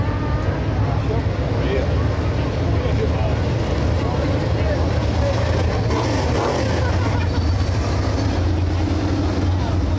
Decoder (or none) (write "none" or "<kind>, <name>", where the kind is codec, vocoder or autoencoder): none